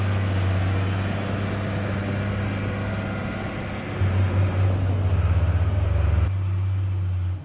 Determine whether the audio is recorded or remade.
recorded